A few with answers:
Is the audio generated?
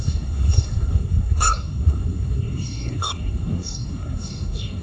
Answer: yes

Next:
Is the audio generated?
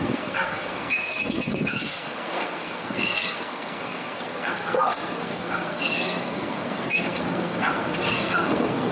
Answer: yes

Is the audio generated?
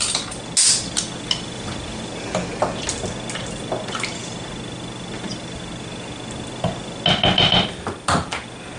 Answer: no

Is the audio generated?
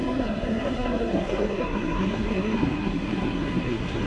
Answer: yes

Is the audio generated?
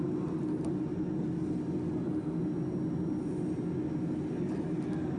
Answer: no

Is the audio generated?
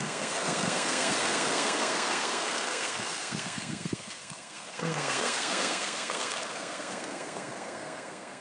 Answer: yes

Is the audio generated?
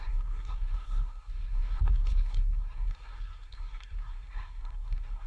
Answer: yes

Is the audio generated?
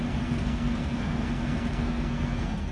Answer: yes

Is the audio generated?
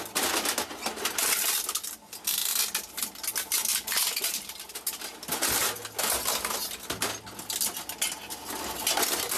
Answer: no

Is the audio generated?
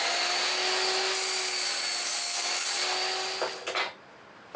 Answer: no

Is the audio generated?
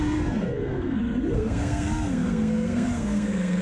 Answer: yes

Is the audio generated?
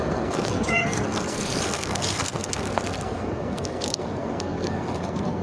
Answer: yes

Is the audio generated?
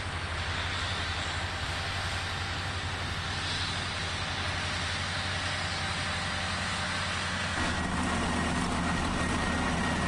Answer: no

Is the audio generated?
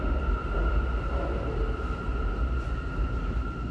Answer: no